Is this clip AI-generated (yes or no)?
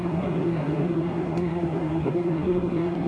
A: yes